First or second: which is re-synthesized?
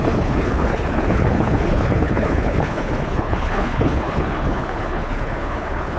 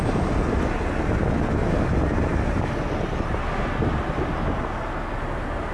first